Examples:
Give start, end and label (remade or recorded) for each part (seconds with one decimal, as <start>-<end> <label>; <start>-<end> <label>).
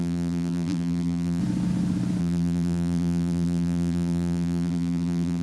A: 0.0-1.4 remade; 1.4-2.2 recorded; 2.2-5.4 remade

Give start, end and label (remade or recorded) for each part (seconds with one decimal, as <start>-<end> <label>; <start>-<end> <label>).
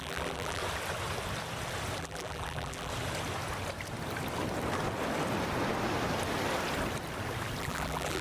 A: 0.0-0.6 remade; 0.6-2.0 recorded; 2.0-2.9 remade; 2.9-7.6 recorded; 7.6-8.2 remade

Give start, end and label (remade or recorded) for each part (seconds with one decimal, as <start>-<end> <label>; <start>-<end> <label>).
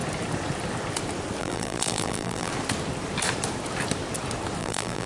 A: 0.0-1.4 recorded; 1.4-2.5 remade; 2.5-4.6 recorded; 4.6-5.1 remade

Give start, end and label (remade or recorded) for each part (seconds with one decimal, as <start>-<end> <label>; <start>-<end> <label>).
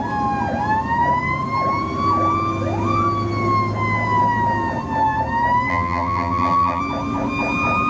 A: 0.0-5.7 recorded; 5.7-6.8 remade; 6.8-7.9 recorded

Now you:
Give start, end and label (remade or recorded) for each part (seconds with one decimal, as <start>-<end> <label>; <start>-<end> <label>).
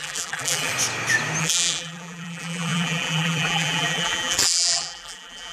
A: 0.0-0.7 remade; 0.7-1.4 recorded; 1.4-5.5 remade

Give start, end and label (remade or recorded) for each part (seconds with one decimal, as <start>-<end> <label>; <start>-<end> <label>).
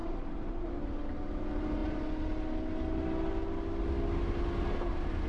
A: 0.0-0.7 remade; 0.7-5.3 recorded